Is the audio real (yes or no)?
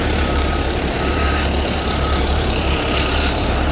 no